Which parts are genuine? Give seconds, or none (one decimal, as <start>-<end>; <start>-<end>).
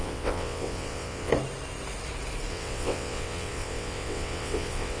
1.3-2.5